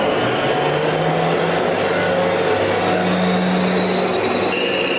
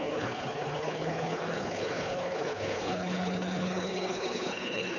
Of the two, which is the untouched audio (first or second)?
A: first